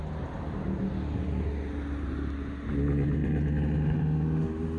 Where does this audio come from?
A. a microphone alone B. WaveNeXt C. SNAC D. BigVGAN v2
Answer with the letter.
A